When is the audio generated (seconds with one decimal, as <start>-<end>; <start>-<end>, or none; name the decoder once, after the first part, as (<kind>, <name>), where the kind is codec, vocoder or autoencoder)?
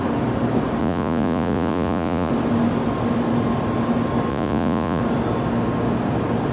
0.8-2.3 (vocoder, Vocos); 4.3-5.0